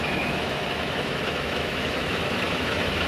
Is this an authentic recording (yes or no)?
no